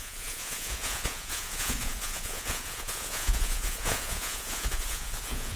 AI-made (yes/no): yes